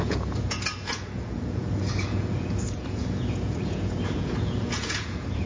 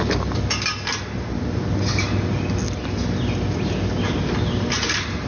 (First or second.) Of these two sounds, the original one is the second